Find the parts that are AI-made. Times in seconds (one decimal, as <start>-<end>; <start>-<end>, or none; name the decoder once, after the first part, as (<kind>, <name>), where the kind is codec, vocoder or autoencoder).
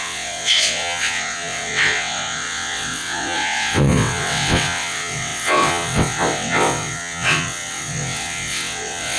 0.0-9.2 (vocoder, WaveNeXt)